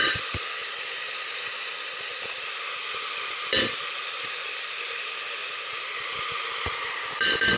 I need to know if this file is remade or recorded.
remade